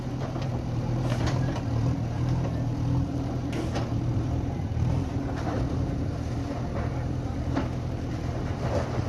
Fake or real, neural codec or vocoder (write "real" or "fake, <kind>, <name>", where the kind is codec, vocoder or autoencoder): fake, vocoder, BigVGAN v2